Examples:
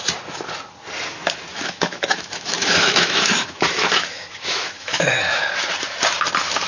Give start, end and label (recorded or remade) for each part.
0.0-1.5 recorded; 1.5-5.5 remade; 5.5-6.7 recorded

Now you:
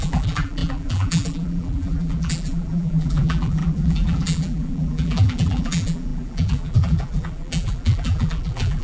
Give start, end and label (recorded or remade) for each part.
0.0-8.8 remade

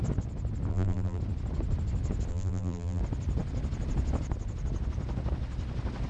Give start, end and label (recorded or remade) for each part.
0.0-0.7 recorded; 0.7-1.2 remade; 1.2-2.3 recorded; 2.3-3.0 remade; 3.0-6.1 recorded

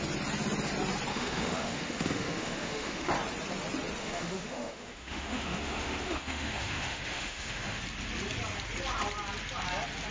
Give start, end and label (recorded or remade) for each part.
0.0-1.1 recorded; 1.1-3.1 remade; 3.1-4.0 recorded; 4.0-7.8 remade; 7.8-10.1 recorded